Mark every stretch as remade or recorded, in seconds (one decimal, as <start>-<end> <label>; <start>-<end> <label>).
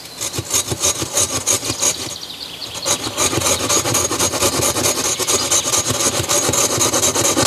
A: 0.0-7.5 recorded